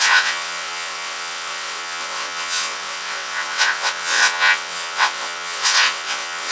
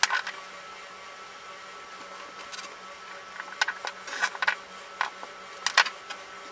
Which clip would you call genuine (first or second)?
second